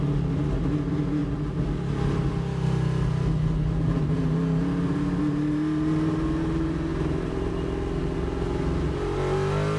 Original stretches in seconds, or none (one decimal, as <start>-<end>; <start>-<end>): 0.0-6.9; 7.5-9.8